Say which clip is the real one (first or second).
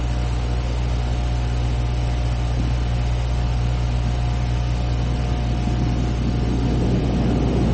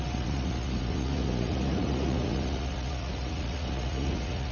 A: first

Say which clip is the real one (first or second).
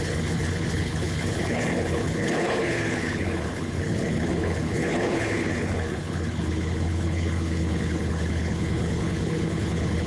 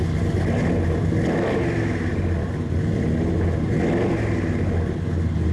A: second